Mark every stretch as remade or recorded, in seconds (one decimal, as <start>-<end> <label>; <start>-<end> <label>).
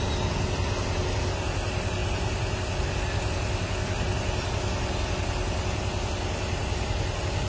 0.0-7.5 recorded